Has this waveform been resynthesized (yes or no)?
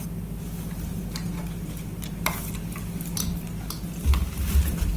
no